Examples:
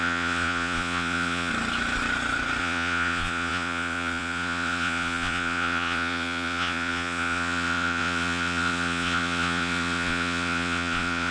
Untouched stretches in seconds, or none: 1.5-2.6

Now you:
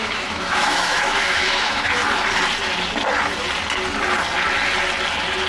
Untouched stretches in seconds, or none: 2.0-5.5

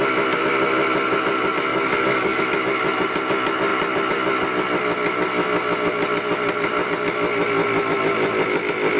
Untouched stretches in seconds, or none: 0.0-1.7; 2.4-9.0

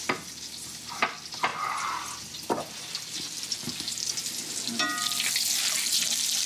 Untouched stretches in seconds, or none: 0.0-6.5